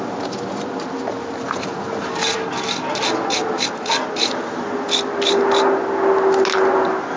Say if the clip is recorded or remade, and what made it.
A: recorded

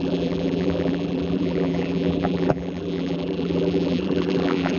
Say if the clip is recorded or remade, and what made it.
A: remade, vocoder, BigVGAN v2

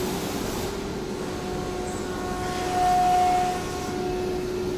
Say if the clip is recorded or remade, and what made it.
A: recorded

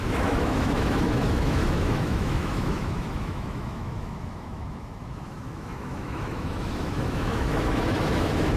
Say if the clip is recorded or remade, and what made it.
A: remade, autoencoder, DAC-VAE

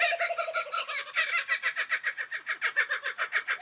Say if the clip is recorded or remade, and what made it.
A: recorded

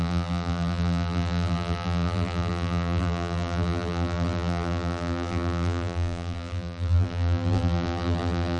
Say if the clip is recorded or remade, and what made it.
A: remade, vocoder, BigVGAN v2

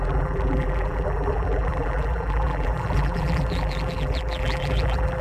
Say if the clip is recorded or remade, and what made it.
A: remade, vocoder, BigVGAN v2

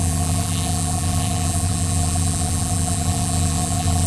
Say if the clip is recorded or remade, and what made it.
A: remade, vocoder, BigVGAN v2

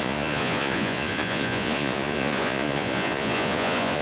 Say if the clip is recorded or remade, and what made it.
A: remade, vocoder, Vocos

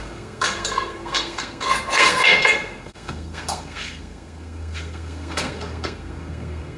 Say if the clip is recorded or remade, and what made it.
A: remade, codec, SNAC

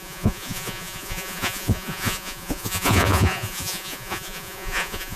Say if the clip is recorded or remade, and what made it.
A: remade, vocoder, Vocos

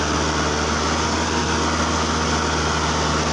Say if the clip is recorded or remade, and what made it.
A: recorded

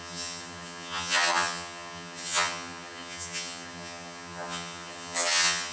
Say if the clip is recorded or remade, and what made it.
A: remade, vocoder, HiFi-GAN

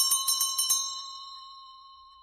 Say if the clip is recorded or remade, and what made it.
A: remade, vocoder, BigVGAN v2